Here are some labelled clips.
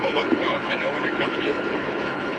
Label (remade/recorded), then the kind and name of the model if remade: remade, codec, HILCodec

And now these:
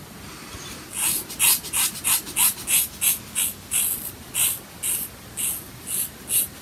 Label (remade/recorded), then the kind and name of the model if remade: recorded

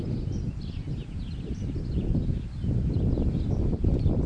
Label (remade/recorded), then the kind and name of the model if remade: recorded